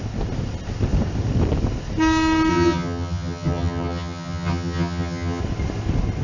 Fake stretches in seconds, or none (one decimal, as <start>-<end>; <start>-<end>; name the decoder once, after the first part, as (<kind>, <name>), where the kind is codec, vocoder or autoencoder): 2.5-5.4 (vocoder, HiFi-GAN)